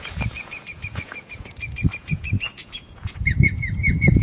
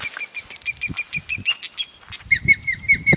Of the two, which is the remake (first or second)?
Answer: first